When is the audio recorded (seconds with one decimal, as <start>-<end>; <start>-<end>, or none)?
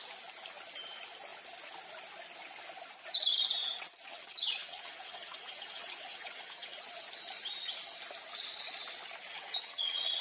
0.0-3.6; 7.1-9.3